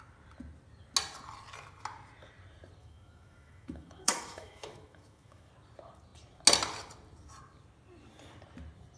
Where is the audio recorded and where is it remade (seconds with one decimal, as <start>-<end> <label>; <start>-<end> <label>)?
0.0-2.8 recorded; 2.8-5.5 remade; 5.5-9.0 recorded

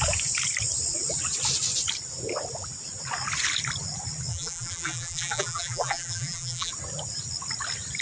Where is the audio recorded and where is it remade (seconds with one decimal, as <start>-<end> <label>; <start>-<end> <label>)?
0.0-4.3 recorded; 4.3-6.7 remade; 6.7-8.0 recorded

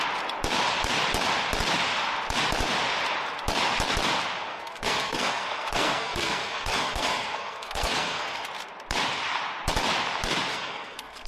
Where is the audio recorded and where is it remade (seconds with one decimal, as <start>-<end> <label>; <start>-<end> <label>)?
0.0-4.5 recorded; 4.5-8.5 remade; 8.5-10.5 recorded; 10.5-11.3 remade

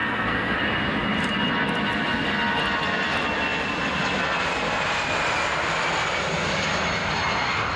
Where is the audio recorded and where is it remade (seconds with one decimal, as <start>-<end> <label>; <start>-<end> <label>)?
0.0-0.6 remade; 0.6-7.8 recorded

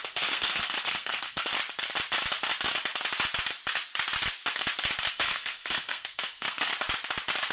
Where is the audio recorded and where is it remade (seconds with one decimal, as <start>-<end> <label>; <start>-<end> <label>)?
0.0-1.5 remade; 1.5-5.1 recorded; 5.1-6.7 remade; 6.7-7.5 recorded

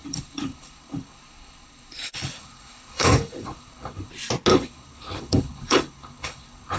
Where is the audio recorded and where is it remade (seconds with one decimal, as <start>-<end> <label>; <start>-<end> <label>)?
0.0-4.1 remade; 4.1-4.5 recorded; 4.5-6.8 remade